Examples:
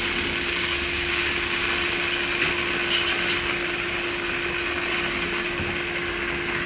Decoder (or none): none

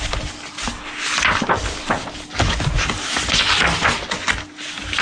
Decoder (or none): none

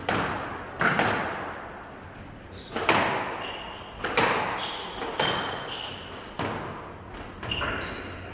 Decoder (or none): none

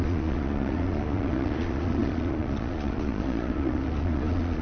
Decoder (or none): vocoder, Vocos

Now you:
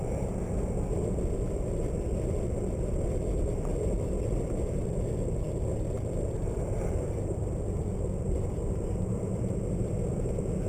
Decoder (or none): none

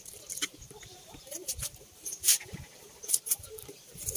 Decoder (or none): vocoder, BigVGAN v2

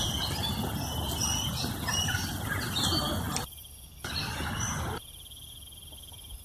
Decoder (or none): none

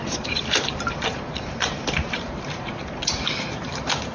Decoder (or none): vocoder, BigVGAN v2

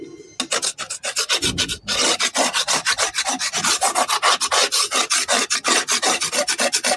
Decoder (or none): none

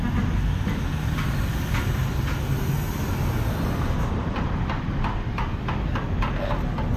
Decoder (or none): none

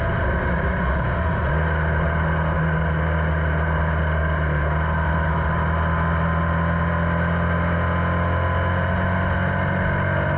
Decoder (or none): none